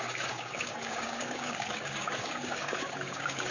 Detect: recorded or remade remade